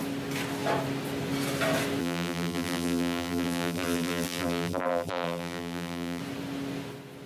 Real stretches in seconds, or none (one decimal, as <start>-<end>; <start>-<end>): 0.0-2.0; 6.2-7.3